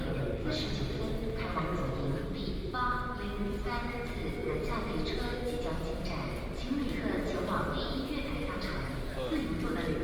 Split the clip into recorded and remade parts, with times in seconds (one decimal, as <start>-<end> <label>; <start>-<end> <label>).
0.0-10.0 recorded

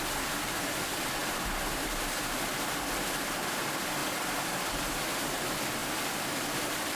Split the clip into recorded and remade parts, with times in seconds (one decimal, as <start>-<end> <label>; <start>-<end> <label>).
0.0-6.9 recorded

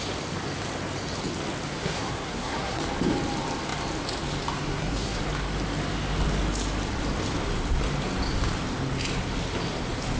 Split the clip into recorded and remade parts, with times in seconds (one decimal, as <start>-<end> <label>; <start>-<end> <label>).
0.0-1.8 recorded; 1.8-2.8 remade; 2.8-4.7 recorded; 4.7-5.2 remade; 5.2-10.2 recorded